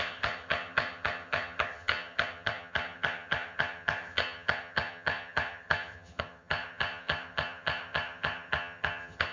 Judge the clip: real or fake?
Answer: fake